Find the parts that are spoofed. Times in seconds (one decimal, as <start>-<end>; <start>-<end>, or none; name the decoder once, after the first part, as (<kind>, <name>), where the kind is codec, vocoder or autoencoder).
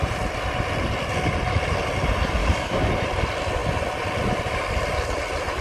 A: 2.4-2.9 (codec, DAC)